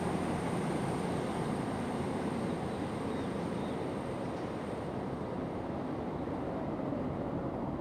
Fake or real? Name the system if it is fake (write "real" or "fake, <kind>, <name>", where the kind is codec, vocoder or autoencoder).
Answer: fake, vocoder, BigVGAN v2